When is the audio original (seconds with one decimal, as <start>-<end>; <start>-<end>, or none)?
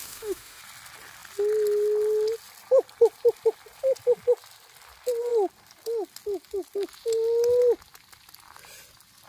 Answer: 0.6-9.3